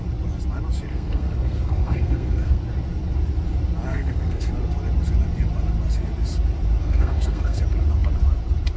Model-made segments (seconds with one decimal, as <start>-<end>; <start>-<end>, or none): 0.9-2.6; 3.9-4.5; 6.8-7.6